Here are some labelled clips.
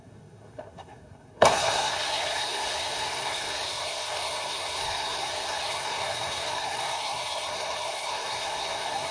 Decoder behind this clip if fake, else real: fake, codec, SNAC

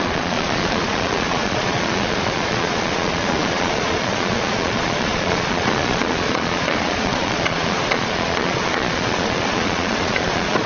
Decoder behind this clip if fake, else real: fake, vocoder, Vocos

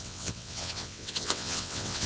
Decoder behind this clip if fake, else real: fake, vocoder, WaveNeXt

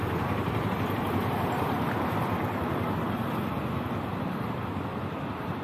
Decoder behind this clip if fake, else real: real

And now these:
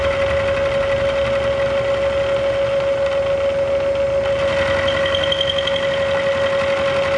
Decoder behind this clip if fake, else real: real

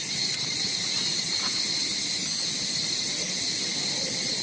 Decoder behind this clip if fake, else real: real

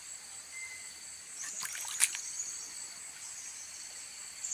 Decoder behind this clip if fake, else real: real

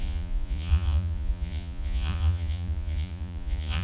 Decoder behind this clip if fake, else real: fake, vocoder, Vocos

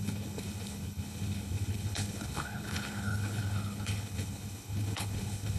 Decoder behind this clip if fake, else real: fake, codec, HILCodec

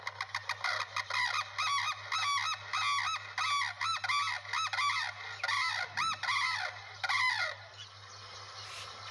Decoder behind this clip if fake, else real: real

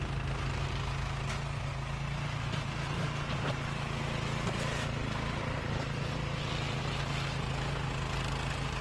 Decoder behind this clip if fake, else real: real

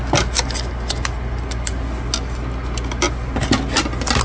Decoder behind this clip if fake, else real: real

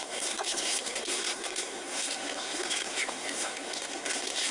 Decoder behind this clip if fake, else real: fake, codec, SNAC